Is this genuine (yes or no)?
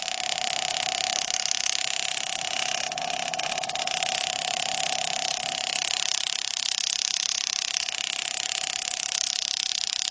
yes